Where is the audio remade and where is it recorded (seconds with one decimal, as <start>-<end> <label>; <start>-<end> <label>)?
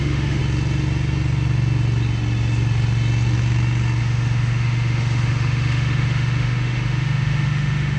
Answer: 0.0-0.4 remade; 0.4-4.0 recorded; 4.0-8.0 remade